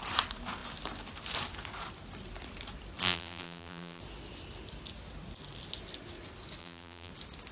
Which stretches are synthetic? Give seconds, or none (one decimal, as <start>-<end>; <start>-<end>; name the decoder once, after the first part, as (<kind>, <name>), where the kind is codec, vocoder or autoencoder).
3.0-4.0 (vocoder, BigVGAN v2); 6.6-7.1